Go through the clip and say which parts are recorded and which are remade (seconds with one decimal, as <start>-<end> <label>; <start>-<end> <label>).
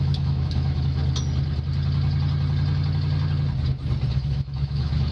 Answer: 0.0-1.0 remade; 1.0-4.1 recorded; 4.1-5.1 remade